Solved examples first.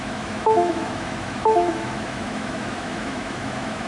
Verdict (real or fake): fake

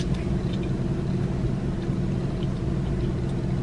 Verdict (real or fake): real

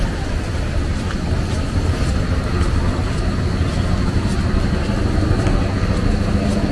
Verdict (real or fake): real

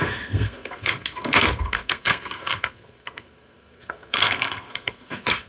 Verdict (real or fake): fake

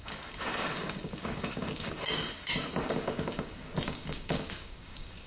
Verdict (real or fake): fake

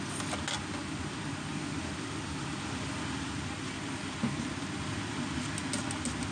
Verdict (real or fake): real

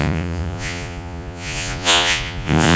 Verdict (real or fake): fake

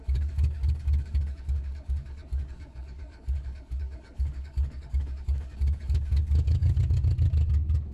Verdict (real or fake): fake